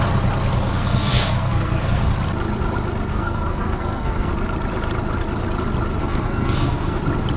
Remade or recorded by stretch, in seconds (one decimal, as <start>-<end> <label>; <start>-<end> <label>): 0.0-0.7 recorded; 0.7-2.1 remade; 2.1-3.1 recorded; 3.1-4.3 remade; 4.3-6.0 recorded; 6.0-7.0 remade; 7.0-7.4 recorded